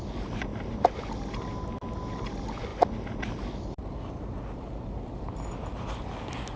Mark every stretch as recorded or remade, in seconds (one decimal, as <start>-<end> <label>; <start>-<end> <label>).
0.0-0.5 recorded; 0.5-1.0 remade; 1.0-6.6 recorded